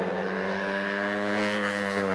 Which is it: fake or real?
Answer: fake